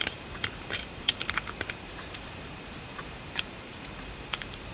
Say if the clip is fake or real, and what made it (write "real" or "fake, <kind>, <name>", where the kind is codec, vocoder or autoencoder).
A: fake, vocoder, BigVGAN v2